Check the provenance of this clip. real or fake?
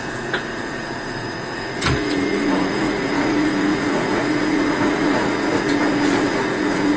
fake